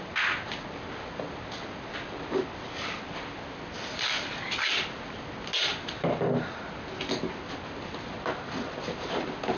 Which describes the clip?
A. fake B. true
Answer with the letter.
B